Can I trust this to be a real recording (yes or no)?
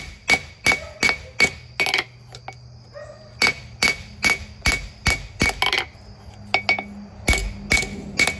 yes